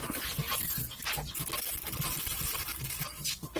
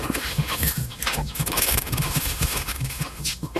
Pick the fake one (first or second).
second